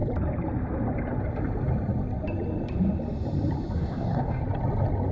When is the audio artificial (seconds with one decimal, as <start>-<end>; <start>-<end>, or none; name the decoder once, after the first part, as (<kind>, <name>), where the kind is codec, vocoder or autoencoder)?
3.8-4.4 (codec, DAC)